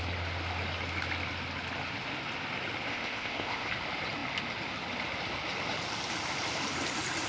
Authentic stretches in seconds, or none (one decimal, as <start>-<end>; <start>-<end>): 0.0-2.9; 3.7-7.3